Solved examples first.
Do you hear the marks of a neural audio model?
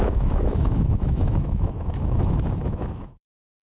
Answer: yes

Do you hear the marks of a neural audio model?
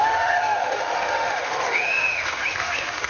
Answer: yes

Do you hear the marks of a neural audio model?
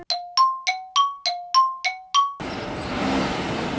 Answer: no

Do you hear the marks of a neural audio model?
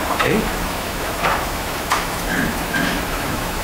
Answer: yes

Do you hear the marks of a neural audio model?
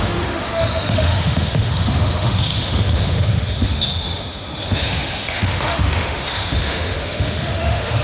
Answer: yes